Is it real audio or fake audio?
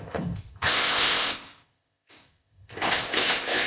fake